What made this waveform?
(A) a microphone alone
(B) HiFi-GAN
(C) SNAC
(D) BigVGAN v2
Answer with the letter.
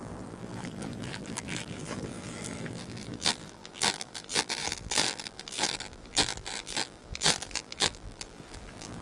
D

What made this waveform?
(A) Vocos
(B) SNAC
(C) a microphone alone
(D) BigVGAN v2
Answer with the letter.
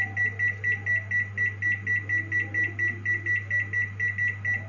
C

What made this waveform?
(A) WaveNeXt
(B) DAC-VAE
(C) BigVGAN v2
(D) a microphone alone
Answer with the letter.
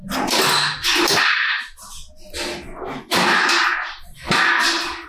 D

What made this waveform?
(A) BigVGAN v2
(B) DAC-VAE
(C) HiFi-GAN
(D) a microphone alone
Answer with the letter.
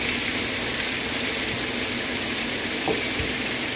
D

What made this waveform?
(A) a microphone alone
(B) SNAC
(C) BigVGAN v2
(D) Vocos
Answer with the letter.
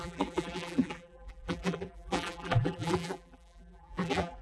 C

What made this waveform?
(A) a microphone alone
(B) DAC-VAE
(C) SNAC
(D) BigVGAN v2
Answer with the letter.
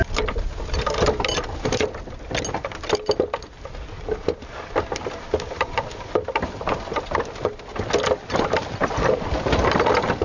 A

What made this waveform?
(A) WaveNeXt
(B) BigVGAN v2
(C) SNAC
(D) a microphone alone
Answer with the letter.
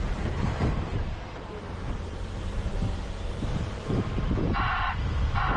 B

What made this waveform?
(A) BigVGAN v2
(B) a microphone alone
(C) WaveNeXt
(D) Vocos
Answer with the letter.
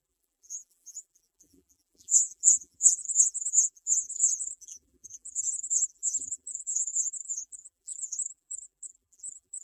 A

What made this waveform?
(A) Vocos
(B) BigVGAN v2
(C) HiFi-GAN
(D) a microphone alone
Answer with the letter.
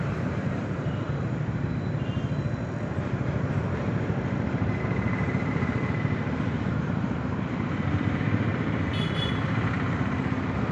B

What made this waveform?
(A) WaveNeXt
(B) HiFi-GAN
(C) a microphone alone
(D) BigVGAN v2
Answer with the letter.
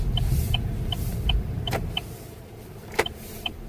D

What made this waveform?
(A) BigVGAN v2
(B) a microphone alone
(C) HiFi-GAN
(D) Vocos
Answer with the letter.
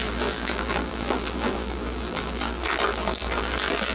A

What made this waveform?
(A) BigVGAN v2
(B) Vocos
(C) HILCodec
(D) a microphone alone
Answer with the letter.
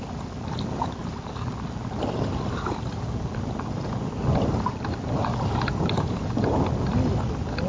D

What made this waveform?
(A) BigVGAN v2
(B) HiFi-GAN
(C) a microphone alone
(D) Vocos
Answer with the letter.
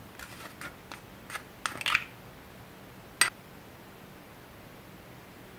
C